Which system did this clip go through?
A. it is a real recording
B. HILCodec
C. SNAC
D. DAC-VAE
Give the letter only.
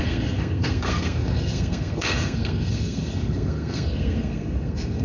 C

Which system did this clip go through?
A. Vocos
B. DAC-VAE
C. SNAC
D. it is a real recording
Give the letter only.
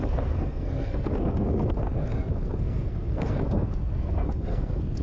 C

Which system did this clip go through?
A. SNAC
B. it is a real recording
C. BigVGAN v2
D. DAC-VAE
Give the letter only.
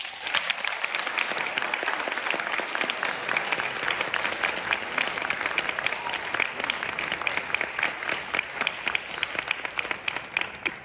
B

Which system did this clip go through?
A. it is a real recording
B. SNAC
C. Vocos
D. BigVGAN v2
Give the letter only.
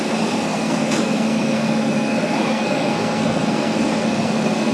B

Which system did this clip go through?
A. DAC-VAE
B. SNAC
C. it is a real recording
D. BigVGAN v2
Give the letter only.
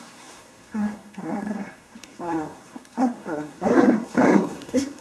B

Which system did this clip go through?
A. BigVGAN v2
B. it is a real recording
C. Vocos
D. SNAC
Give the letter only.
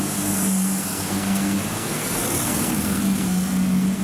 D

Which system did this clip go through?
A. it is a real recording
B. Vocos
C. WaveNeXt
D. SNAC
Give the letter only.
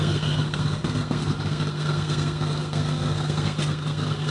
D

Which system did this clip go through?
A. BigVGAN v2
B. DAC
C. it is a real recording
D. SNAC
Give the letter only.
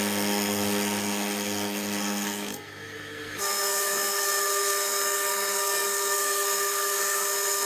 D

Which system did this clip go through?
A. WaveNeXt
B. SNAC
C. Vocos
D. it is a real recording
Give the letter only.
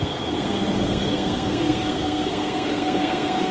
B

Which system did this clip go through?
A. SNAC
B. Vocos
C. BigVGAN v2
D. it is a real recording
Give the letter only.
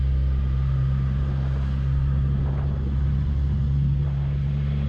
D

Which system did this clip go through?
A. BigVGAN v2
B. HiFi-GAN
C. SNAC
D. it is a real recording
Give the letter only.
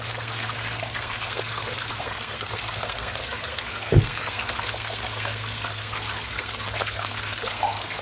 C